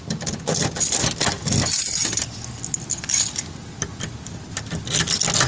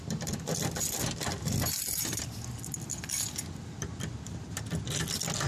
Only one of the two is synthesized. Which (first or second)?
second